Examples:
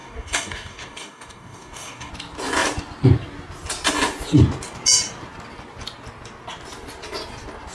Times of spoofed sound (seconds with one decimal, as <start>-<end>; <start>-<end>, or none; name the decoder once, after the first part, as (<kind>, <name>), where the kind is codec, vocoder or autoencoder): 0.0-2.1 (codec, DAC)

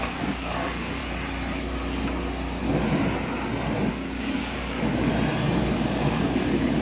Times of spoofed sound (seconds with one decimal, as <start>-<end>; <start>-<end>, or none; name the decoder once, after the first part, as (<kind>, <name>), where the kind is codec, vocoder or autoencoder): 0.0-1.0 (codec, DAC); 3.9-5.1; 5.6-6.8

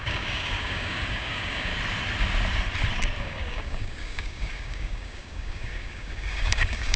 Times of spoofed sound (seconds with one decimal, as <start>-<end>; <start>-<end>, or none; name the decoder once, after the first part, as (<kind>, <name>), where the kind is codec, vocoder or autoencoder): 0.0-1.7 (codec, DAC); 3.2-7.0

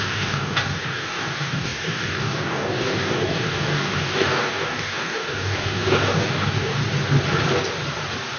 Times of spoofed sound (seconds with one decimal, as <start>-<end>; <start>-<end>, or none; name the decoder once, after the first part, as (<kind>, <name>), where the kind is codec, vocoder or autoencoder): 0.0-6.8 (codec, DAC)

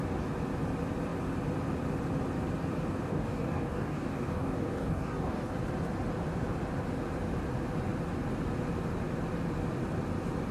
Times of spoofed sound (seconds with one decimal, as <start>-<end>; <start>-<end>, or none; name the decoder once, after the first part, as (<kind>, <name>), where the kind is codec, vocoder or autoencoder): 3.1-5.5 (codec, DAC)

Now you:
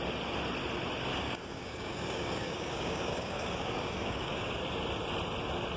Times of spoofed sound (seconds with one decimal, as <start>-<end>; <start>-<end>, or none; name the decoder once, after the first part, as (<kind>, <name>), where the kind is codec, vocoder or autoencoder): 1.1-4.6 (codec, DAC)

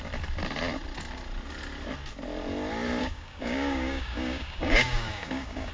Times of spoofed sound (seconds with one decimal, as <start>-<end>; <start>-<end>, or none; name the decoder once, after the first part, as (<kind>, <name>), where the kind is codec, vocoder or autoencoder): 3.0-5.7 (codec, DAC)

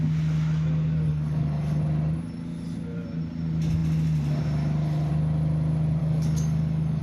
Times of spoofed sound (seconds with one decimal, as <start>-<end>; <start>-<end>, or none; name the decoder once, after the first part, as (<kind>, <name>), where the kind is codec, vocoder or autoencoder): 1.1-1.8 (codec, DAC); 6.0-7.0